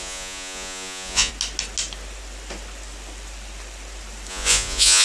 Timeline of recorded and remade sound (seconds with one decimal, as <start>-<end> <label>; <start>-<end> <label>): 0.0-1.3 remade; 1.3-4.3 recorded; 4.3-5.0 remade

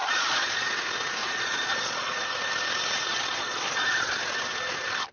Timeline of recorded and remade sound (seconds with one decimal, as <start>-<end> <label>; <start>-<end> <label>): 0.0-0.7 remade; 0.7-1.2 recorded; 1.2-2.3 remade; 2.3-3.1 recorded; 3.1-4.1 remade; 4.1-5.1 recorded

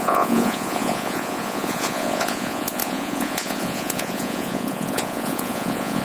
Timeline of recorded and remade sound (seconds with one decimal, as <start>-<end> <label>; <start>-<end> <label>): 0.0-6.0 remade